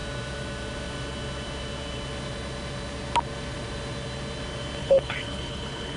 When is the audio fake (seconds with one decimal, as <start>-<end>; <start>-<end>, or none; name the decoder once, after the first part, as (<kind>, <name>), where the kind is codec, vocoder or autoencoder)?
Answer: 4.8-6.0 (codec, HILCodec)